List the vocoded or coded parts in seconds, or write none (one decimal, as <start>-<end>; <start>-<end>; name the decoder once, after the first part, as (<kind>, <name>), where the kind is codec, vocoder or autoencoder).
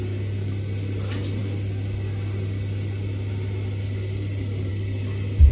none